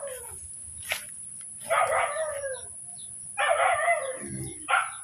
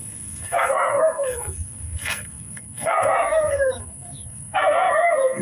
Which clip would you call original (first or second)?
first